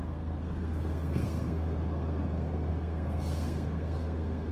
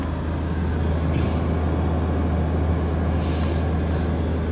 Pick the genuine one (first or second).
second